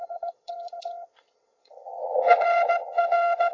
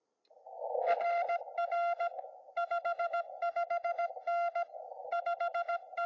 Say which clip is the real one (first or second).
second